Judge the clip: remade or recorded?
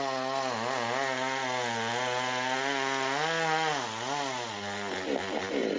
recorded